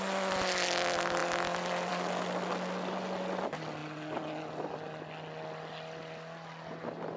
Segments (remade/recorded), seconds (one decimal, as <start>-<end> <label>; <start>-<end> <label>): 0.0-7.2 recorded